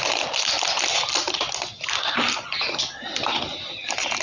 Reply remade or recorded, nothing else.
recorded